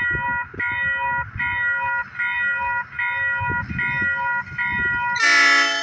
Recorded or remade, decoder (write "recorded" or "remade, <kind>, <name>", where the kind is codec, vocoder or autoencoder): recorded